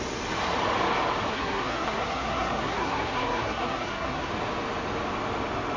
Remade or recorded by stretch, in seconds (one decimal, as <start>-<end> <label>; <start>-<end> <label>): 0.0-1.3 recorded; 1.3-4.3 remade; 4.3-5.8 recorded